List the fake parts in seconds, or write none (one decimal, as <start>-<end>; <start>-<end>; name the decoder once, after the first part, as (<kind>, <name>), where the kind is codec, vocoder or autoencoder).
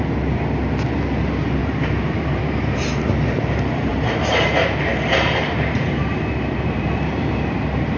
1.6-3.1 (vocoder, BigVGAN v2); 3.9-8.0